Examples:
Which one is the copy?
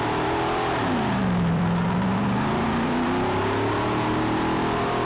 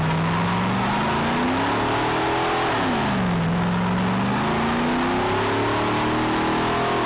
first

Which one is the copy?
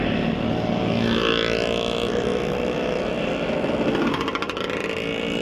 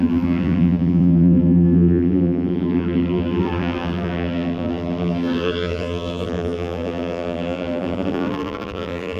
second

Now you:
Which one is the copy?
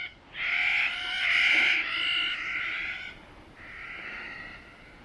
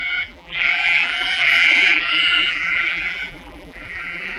second